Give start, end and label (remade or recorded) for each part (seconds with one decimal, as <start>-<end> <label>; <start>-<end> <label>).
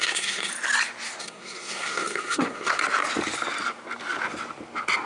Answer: 0.0-0.5 remade; 0.5-1.2 recorded; 1.2-2.8 remade; 2.8-5.1 recorded